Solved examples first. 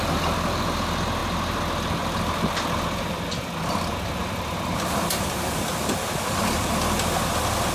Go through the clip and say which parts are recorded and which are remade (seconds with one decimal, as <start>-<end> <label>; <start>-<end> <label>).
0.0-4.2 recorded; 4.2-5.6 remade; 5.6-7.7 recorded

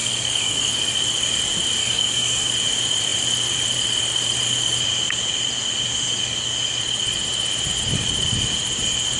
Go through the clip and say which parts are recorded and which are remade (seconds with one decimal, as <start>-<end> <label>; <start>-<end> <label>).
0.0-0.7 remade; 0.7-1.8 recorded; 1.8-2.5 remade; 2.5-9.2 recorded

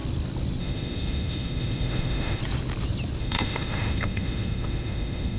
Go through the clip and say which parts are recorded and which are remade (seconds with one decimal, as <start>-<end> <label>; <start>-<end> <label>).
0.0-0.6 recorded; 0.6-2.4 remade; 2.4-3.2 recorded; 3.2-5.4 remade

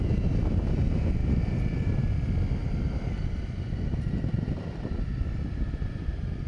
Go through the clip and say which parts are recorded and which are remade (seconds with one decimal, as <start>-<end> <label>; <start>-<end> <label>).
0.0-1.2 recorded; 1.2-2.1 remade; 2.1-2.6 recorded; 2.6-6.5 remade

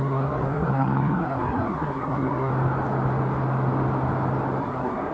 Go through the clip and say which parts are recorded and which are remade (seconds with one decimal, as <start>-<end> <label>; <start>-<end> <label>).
0.0-2.5 remade; 2.5-4.6 recorded; 4.6-5.1 remade

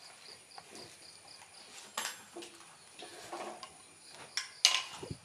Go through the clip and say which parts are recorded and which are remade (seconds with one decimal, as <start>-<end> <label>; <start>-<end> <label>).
0.0-0.6 remade; 0.6-3.1 recorded; 3.1-3.6 remade; 3.6-5.2 recorded

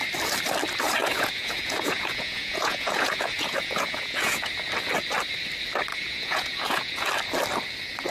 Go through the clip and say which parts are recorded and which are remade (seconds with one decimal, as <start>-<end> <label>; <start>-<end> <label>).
0.0-1.0 recorded; 1.0-4.5 remade; 4.5-5.9 recorded; 5.9-7.1 remade; 7.1-8.1 recorded